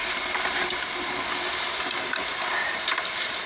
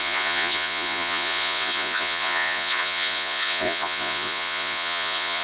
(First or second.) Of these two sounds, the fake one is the second